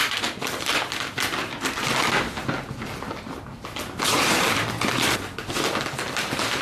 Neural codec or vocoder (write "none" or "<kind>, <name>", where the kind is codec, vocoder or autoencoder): none